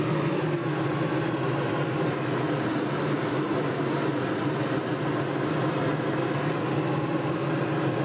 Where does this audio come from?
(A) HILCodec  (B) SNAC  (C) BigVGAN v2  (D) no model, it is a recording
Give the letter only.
D